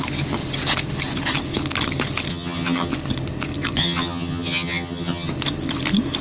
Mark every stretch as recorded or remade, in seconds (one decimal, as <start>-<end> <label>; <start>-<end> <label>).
0.0-2.3 recorded; 2.3-2.9 remade; 2.9-3.8 recorded; 3.8-5.3 remade; 5.3-6.2 recorded